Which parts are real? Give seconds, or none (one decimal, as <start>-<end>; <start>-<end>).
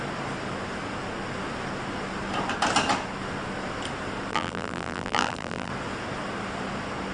0.0-4.3; 5.7-7.1